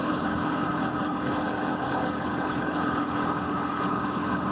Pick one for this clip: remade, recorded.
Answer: remade